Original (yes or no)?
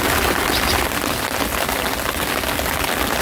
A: yes